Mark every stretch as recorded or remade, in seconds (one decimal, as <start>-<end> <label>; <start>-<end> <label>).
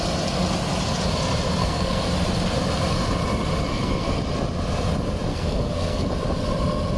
0.0-1.6 recorded; 1.6-2.1 remade; 2.1-3.7 recorded; 3.7-4.2 remade; 4.2-5.3 recorded; 5.3-6.1 remade; 6.1-7.0 recorded